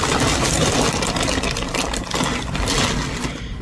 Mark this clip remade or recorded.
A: recorded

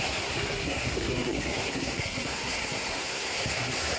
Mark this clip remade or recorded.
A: remade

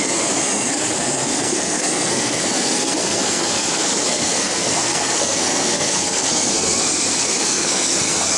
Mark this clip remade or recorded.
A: remade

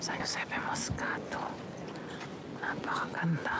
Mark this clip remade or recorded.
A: recorded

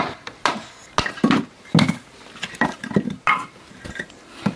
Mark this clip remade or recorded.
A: recorded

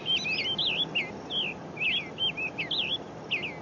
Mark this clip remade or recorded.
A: recorded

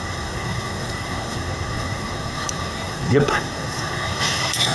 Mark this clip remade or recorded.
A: remade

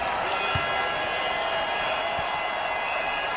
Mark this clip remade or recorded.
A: recorded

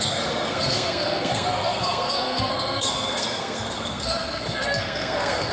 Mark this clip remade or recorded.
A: remade